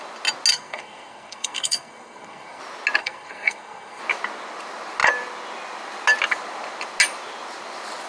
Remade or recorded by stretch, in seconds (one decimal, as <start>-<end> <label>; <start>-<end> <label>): 0.0-0.5 recorded; 0.5-2.6 remade; 2.6-3.0 recorded; 3.0-4.0 remade; 4.0-8.1 recorded